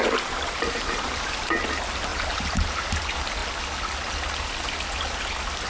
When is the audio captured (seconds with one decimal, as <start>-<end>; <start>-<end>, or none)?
1.5-2.1; 3.0-5.7